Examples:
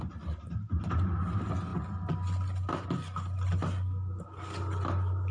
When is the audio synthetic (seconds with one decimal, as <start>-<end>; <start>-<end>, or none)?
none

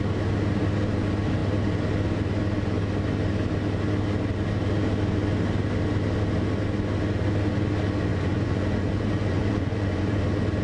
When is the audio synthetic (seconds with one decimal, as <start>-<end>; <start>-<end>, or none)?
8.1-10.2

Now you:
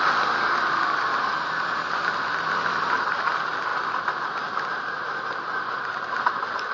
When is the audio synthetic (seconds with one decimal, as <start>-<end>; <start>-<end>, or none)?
none

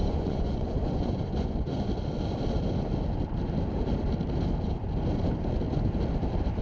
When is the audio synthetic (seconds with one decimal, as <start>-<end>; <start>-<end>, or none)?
0.0-1.8